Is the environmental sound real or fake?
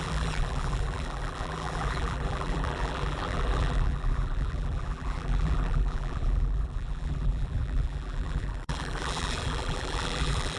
fake